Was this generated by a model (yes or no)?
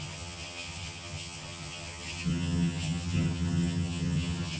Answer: yes